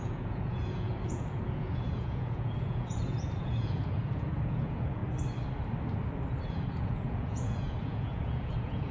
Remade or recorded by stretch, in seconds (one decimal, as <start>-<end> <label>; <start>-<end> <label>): 0.0-5.0 remade; 5.0-6.5 recorded; 6.5-8.9 remade